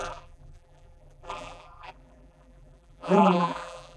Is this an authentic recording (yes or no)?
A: no